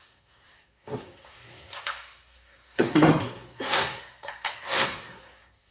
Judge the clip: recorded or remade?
remade